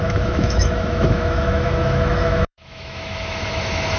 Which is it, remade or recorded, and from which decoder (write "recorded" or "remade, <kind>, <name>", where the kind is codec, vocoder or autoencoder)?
remade, autoencoder, DAC-VAE